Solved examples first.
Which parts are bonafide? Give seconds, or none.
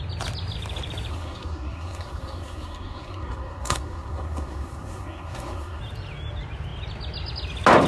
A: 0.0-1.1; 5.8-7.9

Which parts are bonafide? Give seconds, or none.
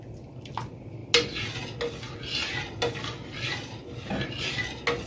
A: 0.0-5.1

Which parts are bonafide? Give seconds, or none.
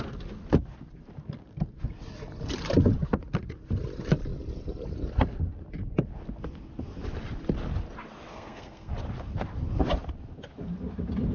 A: 0.0-8.3; 8.9-11.3